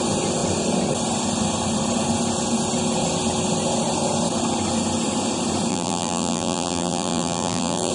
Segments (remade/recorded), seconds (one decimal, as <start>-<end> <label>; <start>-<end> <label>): 0.0-5.7 recorded; 5.7-7.9 remade